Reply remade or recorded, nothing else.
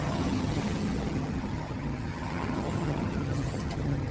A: remade